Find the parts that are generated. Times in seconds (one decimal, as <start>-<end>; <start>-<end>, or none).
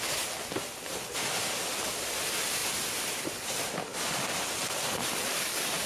none